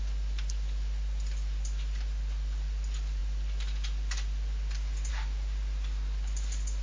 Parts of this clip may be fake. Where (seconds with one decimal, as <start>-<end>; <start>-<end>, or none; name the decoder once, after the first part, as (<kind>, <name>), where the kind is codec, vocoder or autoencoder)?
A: none